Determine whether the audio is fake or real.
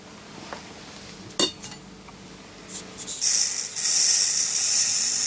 real